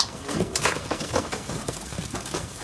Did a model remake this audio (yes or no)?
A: yes